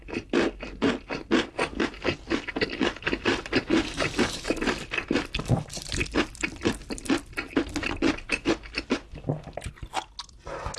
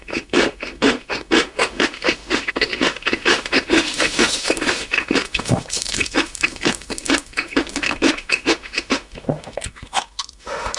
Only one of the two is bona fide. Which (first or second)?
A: first